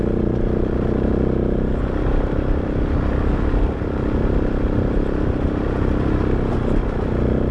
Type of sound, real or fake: real